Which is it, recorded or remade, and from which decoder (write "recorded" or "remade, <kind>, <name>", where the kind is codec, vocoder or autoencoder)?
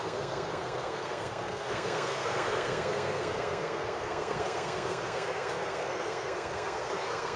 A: remade, codec, SNAC